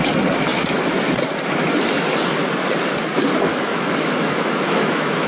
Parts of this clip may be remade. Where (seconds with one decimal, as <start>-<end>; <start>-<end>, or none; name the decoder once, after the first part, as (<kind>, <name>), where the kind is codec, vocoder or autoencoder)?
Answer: 3.5-5.3 (autoencoder, DAC-VAE)